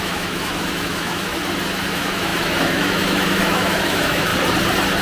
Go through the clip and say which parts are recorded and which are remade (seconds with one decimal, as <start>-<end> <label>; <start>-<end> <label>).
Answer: 0.0-1.4 remade; 1.4-1.9 recorded; 1.9-4.3 remade; 4.3-5.0 recorded